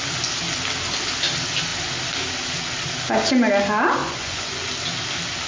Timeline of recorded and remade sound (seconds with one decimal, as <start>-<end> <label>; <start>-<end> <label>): 0.0-4.0 recorded; 4.0-4.6 remade; 4.6-5.5 recorded